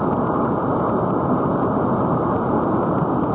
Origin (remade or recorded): recorded